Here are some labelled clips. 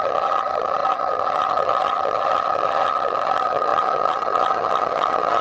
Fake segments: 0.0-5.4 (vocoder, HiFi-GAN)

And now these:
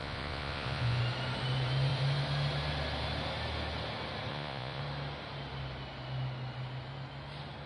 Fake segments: 0.0-1.0 (vocoder, Vocos); 4.3-4.8